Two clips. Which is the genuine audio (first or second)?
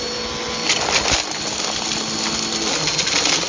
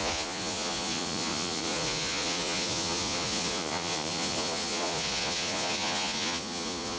first